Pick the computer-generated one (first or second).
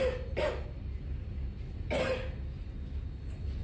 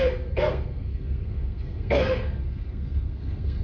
second